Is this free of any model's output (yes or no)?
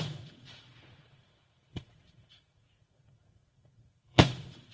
no